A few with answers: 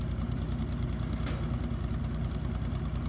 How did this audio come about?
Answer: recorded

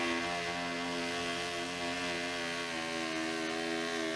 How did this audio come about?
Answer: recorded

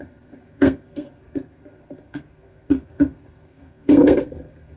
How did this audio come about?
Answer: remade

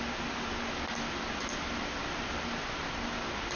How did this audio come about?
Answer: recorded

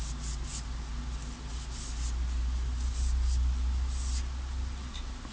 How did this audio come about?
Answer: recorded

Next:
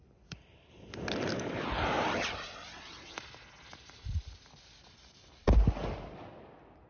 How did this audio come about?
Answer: recorded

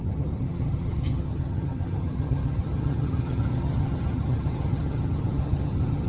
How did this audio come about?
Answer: remade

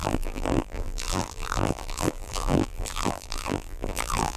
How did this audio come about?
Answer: remade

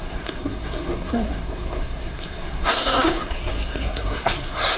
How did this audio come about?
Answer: remade